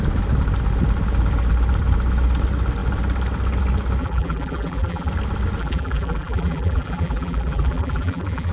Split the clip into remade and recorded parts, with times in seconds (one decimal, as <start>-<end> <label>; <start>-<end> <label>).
0.0-4.0 recorded; 4.0-5.1 remade; 5.1-5.6 recorded; 5.6-8.5 remade